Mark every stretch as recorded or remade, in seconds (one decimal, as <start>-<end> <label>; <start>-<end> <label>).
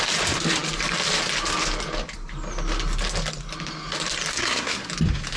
0.0-4.3 recorded; 4.3-4.9 remade; 4.9-5.4 recorded